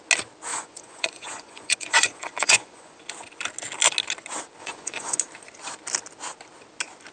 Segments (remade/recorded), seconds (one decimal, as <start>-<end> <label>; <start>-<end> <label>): 0.0-0.5 recorded; 0.5-3.0 remade; 3.0-4.6 recorded; 4.6-5.2 remade; 5.2-7.1 recorded